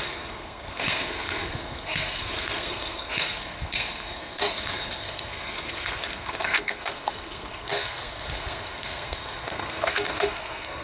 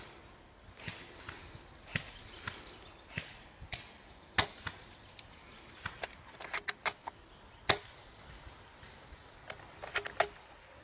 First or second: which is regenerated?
first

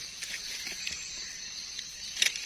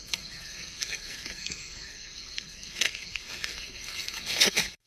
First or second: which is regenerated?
second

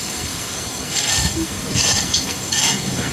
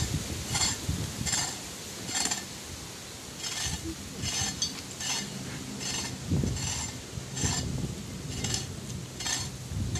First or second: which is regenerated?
first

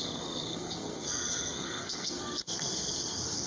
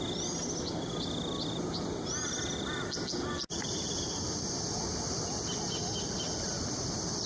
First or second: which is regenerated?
first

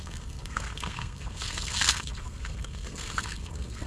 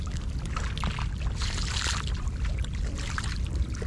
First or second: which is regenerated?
first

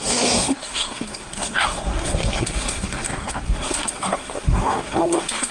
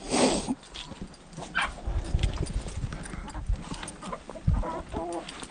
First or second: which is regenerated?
first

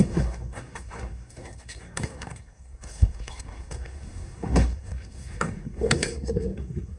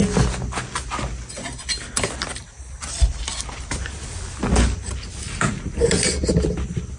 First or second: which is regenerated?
first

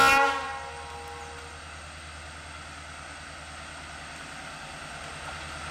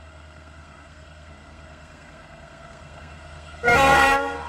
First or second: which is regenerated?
second